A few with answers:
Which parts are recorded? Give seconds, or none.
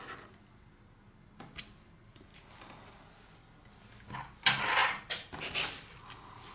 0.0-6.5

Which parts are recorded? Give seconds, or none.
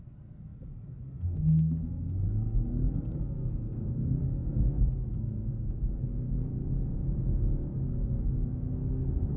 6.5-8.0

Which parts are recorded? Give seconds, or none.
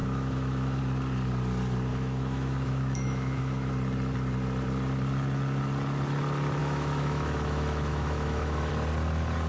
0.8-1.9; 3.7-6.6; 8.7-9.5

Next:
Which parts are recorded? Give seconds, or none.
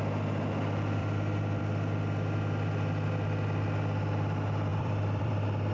0.0-1.0; 1.6-4.7; 5.3-5.7